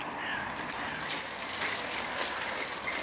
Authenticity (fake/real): real